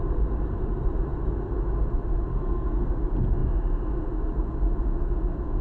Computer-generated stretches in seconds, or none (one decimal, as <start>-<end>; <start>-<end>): 2.3-2.9